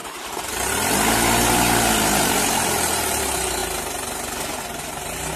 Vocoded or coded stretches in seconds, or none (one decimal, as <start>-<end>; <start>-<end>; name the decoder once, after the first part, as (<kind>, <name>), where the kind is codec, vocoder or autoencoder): none